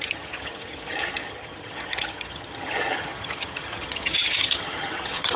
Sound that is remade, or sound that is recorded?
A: remade